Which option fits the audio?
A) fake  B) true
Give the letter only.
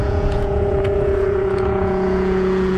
A